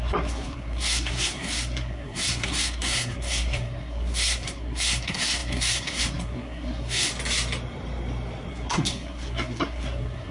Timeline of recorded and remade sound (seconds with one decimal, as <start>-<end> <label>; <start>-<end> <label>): 0.0-7.1 remade; 7.1-8.5 recorded; 8.5-10.3 remade